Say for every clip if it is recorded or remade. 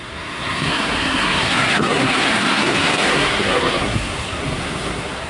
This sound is remade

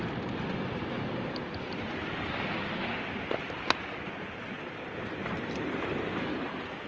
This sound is recorded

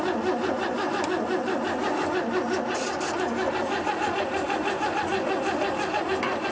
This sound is recorded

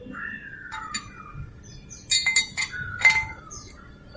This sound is recorded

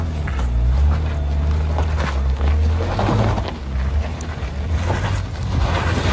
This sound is recorded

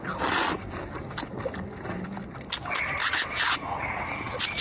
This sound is recorded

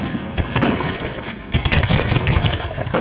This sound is remade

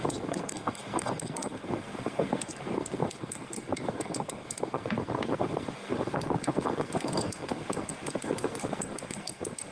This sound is remade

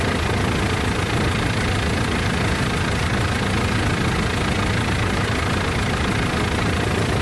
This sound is recorded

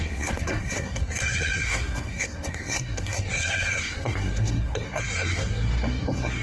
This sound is remade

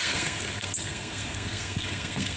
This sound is remade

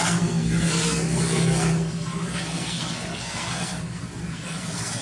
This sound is remade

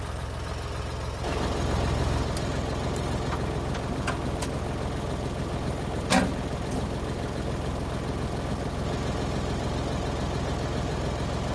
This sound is recorded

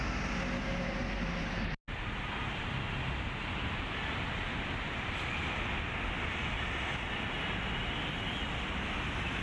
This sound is recorded